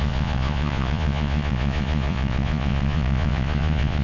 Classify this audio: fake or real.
fake